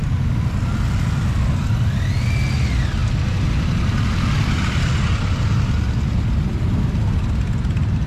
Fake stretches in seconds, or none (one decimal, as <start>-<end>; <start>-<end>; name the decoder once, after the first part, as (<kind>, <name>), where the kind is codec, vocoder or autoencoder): none